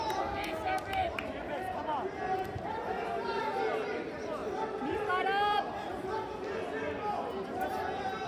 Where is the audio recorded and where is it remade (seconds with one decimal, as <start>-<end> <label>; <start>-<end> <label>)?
0.0-1.0 recorded; 1.0-3.4 remade; 3.4-8.3 recorded